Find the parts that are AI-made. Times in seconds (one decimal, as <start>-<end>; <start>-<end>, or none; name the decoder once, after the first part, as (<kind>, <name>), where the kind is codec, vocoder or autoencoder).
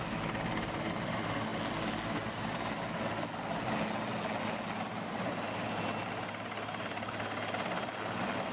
none